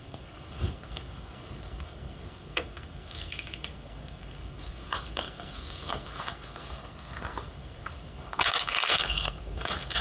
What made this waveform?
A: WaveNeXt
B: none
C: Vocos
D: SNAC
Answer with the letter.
D